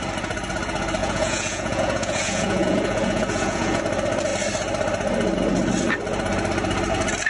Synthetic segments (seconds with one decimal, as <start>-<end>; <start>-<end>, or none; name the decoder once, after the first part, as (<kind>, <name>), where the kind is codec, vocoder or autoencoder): 1.0-3.8 (vocoder, Vocos)